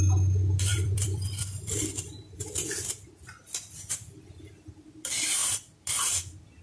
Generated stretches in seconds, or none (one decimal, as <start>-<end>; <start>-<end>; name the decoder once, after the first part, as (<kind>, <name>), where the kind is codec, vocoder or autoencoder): 0.7-4.7 (vocoder, BigVGAN v2)